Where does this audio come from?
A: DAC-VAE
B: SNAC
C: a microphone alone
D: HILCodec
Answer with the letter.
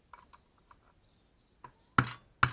C